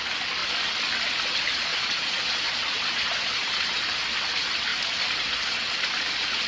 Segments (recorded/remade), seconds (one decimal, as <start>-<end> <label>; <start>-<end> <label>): 0.0-1.7 recorded; 1.7-3.5 remade; 3.5-6.5 recorded